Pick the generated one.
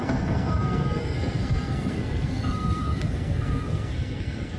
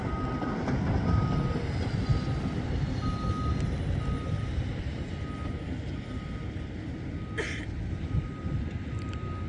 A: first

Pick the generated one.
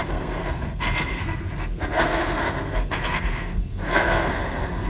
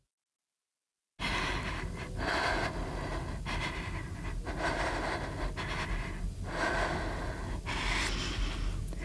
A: first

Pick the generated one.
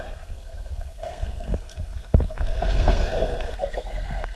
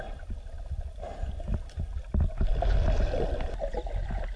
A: first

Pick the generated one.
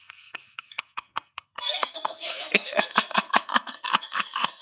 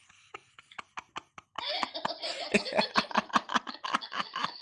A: first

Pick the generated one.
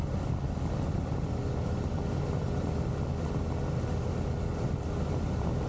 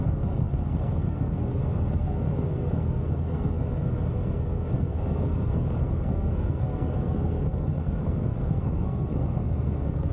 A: second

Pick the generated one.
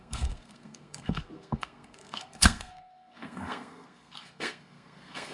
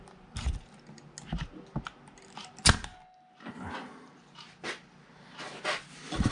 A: first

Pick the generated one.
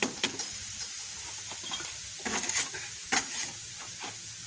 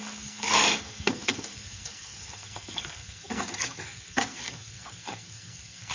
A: second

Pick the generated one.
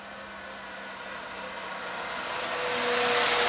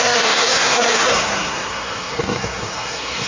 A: second